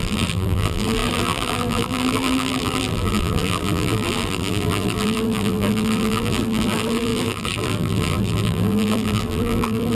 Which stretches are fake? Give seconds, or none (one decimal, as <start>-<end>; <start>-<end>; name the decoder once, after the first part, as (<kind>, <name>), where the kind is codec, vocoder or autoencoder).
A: 0.0-9.9 (vocoder, BigVGAN v2)